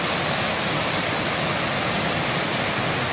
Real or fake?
real